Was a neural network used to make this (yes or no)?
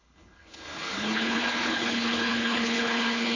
yes